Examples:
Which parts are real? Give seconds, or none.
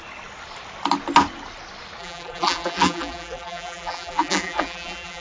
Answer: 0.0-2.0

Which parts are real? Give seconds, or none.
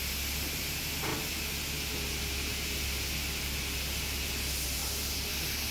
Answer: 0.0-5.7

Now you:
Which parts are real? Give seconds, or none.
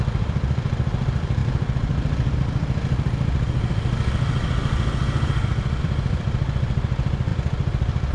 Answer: 1.4-5.8